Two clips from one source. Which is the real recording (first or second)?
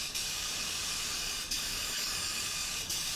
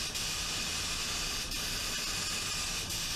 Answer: second